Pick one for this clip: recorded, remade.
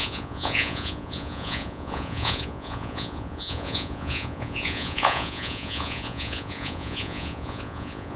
remade